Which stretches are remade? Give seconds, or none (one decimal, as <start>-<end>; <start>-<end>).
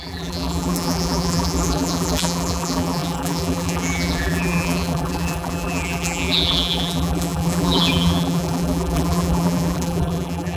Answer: 0.0-10.6